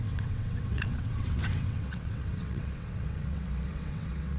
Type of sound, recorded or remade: remade